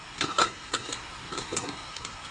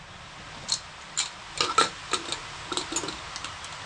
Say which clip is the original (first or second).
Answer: second